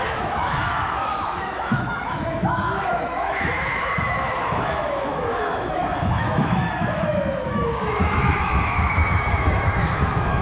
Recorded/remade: remade